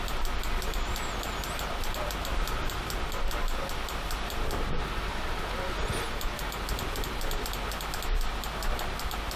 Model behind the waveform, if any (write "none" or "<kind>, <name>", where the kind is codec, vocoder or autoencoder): none